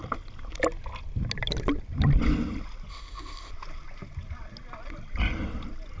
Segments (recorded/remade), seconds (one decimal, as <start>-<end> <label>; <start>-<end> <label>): 0.0-2.9 recorded; 2.9-3.5 remade; 3.5-6.0 recorded